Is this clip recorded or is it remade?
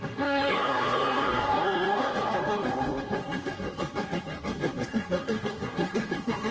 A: remade